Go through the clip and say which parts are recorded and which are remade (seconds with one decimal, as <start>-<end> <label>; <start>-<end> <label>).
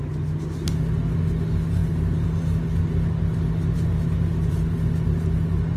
0.0-5.8 recorded